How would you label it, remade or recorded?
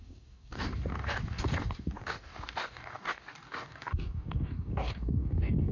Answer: remade